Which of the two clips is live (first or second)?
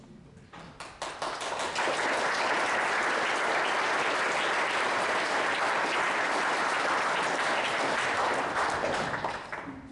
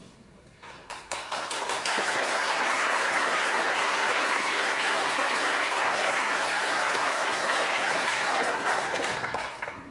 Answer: first